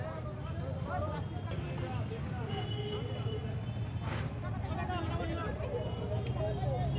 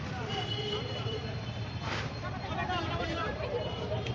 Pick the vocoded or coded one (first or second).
second